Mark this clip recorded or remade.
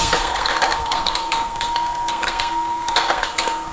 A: remade